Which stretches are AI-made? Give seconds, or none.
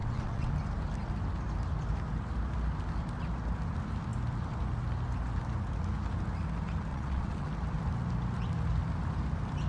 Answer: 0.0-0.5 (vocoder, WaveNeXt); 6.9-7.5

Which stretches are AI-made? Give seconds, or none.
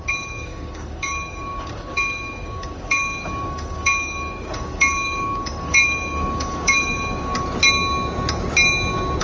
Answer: 0.0-7.3 (codec, DAC)